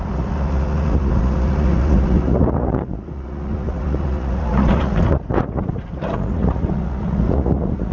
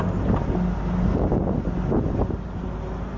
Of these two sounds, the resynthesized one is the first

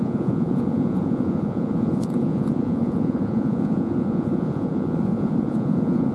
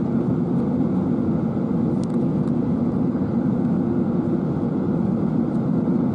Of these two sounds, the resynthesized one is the first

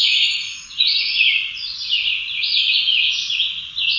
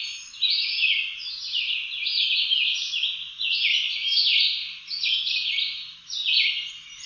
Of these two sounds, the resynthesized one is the first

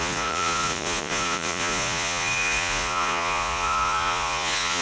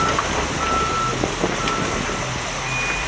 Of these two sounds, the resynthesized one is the first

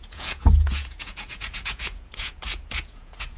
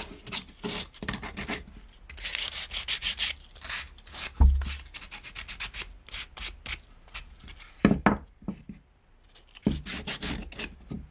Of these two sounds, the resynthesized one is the first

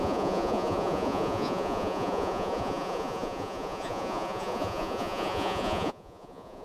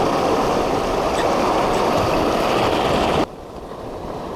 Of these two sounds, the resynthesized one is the first